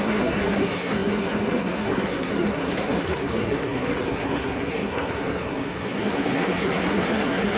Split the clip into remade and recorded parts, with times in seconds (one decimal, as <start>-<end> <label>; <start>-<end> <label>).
0.0-7.6 remade